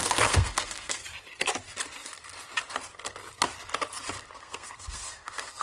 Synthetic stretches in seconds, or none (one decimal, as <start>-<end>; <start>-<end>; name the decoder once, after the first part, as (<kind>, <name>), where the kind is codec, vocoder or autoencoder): 0.0-1.0 (codec, SNAC); 4.4-5.6